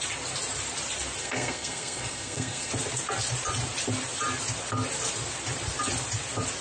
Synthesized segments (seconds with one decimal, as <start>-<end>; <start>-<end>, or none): 1.2-2.7